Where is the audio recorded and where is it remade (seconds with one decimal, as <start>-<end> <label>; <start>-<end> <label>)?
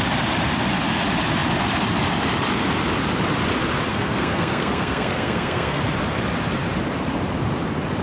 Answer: 0.0-3.9 recorded; 3.9-5.8 remade; 5.8-8.0 recorded